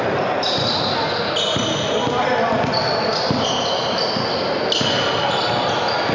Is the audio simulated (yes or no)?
no